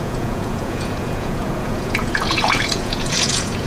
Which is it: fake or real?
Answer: fake